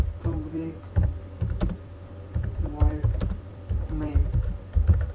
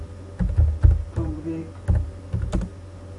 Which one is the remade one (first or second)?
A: first